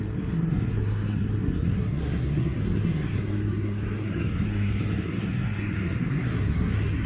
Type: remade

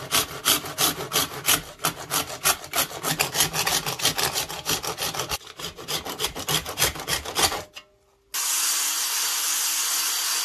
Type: recorded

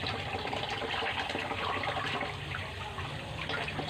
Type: recorded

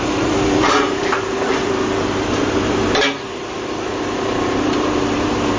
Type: remade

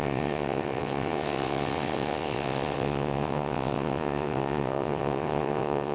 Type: remade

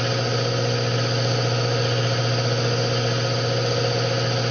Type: recorded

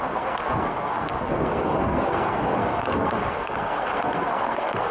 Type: remade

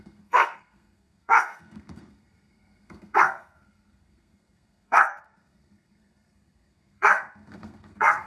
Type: remade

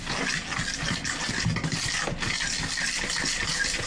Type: recorded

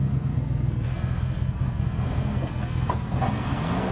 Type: remade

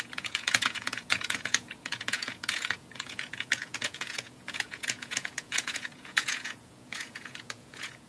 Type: remade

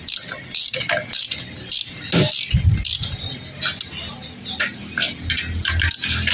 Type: recorded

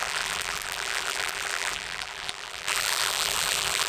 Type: remade